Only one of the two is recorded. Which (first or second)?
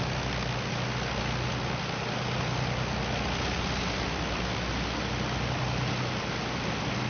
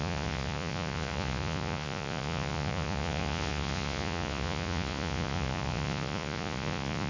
first